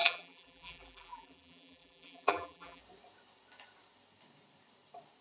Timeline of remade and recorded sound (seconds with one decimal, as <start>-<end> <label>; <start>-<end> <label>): 0.0-2.8 remade; 2.8-5.2 recorded